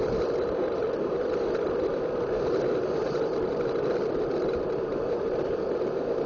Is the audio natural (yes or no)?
yes